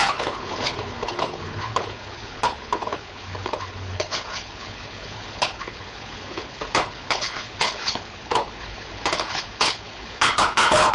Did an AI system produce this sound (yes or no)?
yes